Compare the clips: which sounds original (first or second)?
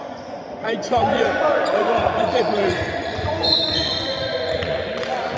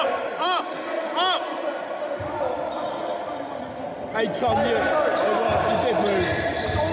second